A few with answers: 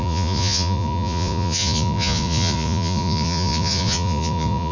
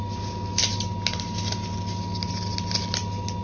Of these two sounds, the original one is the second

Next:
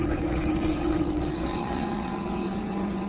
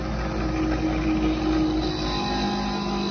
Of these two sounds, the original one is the second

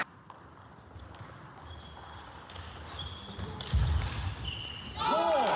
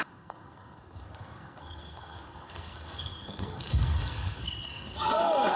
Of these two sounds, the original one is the first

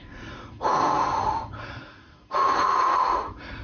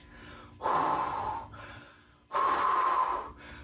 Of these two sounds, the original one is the second